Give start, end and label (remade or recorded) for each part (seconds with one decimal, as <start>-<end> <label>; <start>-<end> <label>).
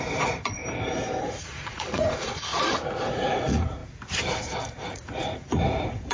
0.0-0.6 remade; 0.6-1.2 recorded; 1.2-2.5 remade; 2.5-3.1 recorded; 3.1-3.8 remade; 3.8-4.3 recorded; 4.3-6.1 remade